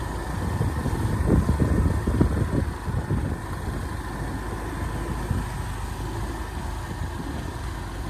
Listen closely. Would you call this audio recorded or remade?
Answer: recorded